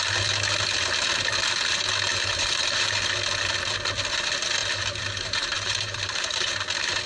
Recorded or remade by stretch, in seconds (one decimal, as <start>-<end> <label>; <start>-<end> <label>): 0.0-2.1 recorded; 2.1-3.0 remade; 3.0-4.6 recorded; 4.6-6.5 remade; 6.5-7.1 recorded

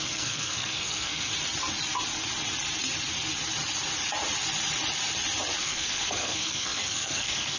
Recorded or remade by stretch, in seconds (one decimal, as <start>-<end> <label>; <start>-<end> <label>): 0.0-1.3 remade; 1.3-5.6 recorded; 5.6-7.6 remade

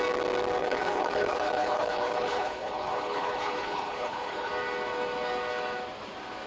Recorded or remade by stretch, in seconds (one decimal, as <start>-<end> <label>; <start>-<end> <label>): 0.0-0.6 recorded; 0.6-4.5 remade; 4.5-6.5 recorded

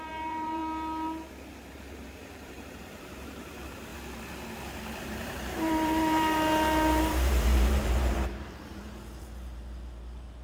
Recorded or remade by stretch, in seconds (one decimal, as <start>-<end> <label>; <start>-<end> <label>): 0.0-0.6 remade; 0.6-1.7 recorded; 1.7-3.9 remade; 3.9-5.0 recorded; 5.0-10.4 remade

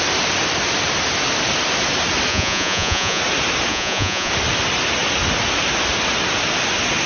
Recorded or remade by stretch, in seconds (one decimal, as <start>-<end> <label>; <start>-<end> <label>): 0.0-2.3 recorded; 2.3-3.2 remade; 3.2-3.7 recorded; 3.7-4.3 remade; 4.3-7.1 recorded